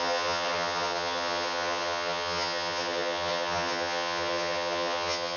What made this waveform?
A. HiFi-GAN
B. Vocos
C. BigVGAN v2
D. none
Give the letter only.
A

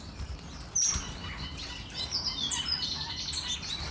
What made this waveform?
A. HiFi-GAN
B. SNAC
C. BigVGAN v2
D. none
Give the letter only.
D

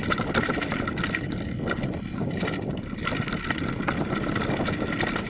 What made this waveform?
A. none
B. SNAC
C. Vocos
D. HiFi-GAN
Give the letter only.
A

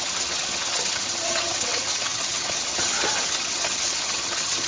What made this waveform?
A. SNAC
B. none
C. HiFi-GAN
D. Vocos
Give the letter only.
C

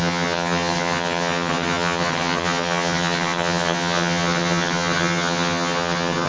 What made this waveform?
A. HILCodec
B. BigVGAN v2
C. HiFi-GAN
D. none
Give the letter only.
C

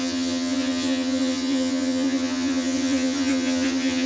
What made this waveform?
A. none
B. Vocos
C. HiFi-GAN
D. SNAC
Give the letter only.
C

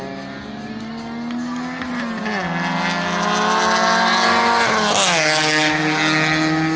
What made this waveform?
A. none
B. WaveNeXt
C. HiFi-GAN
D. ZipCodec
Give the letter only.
A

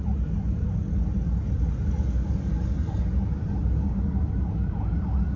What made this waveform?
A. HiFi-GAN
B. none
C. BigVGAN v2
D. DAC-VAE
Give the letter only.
B